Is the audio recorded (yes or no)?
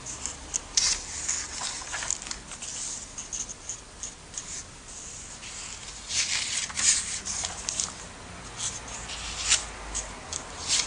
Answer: yes